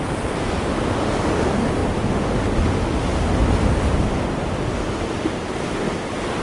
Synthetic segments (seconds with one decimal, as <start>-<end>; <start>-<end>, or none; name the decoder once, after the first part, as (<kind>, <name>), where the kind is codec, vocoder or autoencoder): none